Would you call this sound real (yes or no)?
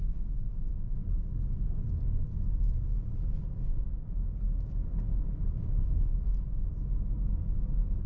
yes